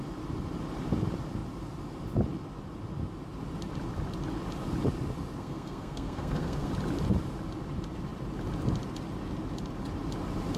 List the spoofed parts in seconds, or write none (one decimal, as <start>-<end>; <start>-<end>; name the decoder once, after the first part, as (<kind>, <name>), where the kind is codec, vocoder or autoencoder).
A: 5.4-6.7 (codec, SNAC)